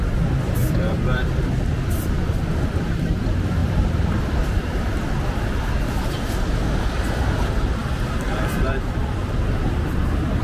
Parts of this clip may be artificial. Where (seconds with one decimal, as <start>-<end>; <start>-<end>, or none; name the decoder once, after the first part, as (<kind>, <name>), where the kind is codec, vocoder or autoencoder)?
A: 0.6-1.3 (vocoder, BigVGAN v2); 3.6-5.9; 7.8-10.0